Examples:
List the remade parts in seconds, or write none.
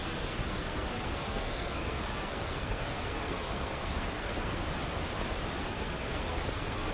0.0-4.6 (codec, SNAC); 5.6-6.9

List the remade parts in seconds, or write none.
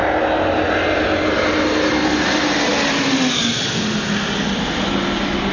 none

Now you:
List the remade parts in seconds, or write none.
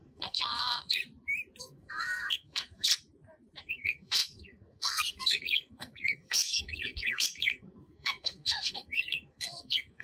0.0-1.0 (codec, SNAC); 1.6-2.9; 3.6-10.0